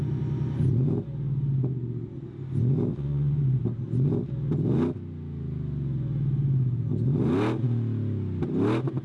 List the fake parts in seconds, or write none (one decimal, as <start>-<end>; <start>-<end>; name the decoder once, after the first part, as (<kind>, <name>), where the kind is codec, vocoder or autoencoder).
2.9-3.6 (vocoder, Vocos)